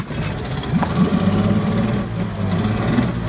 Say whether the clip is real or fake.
real